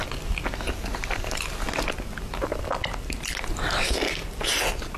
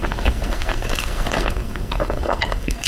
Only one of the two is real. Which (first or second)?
first